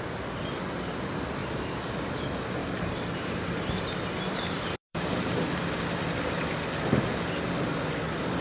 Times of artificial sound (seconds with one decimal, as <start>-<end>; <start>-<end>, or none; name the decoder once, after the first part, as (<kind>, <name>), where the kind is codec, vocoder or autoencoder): 1.4-2.1 (vocoder, BigVGAN v2); 2.6-5.8

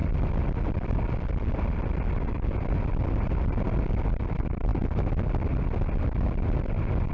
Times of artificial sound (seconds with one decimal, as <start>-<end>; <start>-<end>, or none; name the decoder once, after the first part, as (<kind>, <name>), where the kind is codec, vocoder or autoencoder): none

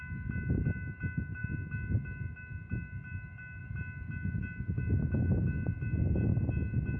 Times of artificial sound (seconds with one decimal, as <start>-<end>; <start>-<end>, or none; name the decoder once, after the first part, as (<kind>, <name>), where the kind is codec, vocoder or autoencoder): none

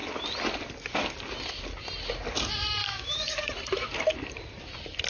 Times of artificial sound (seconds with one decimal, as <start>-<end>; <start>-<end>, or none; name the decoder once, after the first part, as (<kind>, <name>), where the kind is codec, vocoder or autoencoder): 2.8-3.5 (codec, DAC)

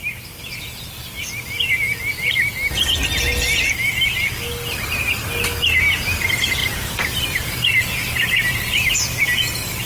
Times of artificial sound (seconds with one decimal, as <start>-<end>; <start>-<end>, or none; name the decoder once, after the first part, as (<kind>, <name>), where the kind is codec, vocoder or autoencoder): none

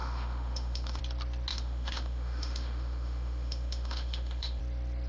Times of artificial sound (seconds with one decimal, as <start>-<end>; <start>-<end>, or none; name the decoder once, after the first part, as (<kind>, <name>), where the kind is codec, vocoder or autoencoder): 0.0-1.0 (autoencoder, DAC-VAE); 1.5-4.6